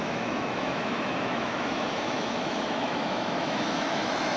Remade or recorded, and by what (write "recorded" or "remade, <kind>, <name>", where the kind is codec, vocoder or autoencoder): remade, autoencoder, DAC-VAE